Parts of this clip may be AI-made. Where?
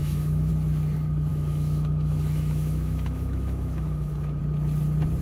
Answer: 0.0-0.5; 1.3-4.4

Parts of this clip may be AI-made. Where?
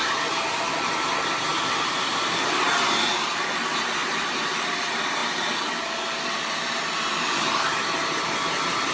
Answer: 1.5-3.6; 4.0-4.8